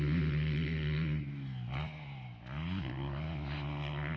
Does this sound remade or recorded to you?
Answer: recorded